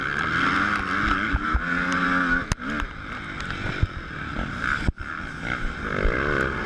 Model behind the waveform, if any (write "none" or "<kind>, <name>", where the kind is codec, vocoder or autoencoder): none